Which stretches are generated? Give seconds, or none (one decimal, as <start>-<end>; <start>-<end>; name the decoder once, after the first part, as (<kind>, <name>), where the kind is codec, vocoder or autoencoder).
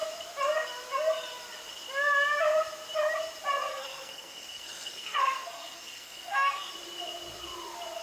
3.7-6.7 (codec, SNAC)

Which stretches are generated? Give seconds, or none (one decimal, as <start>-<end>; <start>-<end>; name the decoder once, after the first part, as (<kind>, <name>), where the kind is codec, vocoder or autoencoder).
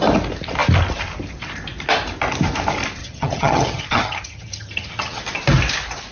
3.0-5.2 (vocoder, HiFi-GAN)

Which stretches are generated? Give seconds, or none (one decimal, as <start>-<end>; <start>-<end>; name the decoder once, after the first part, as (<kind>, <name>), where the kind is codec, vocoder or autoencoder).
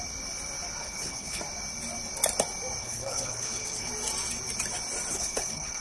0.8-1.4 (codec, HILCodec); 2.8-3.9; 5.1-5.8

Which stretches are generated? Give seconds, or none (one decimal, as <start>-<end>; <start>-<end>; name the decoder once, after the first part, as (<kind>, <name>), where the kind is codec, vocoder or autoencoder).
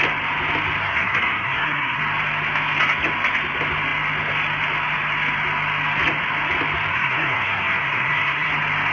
0.8-2.0 (codec, SNAC); 6.9-8.5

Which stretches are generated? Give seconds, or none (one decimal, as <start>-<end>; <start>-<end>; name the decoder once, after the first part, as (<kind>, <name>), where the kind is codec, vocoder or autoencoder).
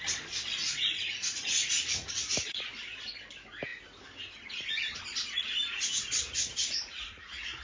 0.6-2.7 (vocoder, Vocos); 6.6-7.6